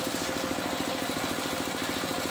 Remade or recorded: recorded